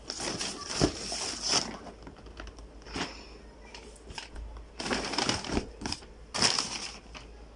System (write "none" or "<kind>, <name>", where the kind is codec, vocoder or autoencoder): none